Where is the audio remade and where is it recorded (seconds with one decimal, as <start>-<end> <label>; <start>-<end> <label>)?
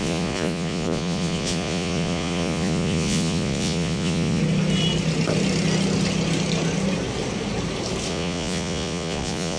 0.0-4.4 remade; 4.4-8.1 recorded; 8.1-9.6 remade